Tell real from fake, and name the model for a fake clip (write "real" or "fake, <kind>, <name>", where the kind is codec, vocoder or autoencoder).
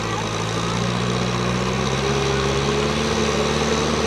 real